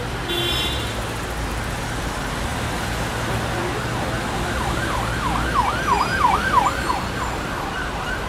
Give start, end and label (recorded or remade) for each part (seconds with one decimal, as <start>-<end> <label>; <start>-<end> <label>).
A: 0.0-8.3 recorded